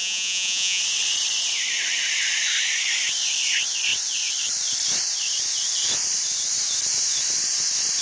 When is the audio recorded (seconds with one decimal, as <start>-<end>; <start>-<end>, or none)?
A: 0.8-8.0